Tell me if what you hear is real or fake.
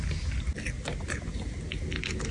real